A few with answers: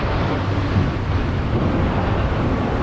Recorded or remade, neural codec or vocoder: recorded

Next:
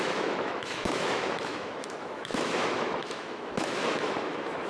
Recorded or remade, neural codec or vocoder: remade, autoencoder, DAC-VAE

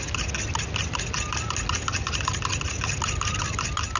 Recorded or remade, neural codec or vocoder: recorded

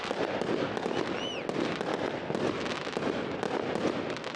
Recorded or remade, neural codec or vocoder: recorded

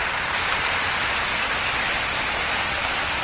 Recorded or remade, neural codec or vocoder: recorded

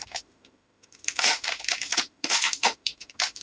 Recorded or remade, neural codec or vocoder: remade, autoencoder, DAC-VAE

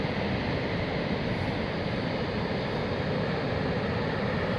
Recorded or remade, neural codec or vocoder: recorded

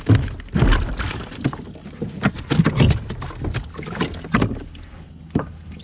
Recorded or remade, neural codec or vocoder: recorded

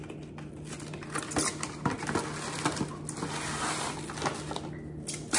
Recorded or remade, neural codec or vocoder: recorded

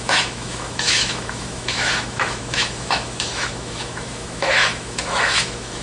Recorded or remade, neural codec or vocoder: remade, autoencoder, DAC-VAE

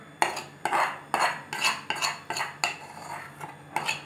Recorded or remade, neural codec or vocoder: recorded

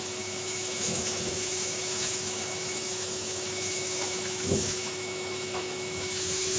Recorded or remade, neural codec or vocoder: remade, autoencoder, DAC-VAE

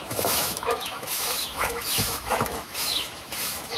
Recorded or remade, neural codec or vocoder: remade, autoencoder, DAC-VAE